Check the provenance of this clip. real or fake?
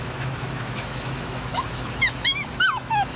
fake